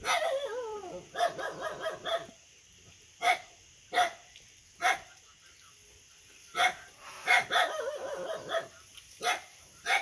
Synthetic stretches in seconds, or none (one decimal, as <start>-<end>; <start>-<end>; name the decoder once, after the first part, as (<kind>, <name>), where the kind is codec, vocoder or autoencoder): 0.0-10.0 (vocoder, BigVGAN v2)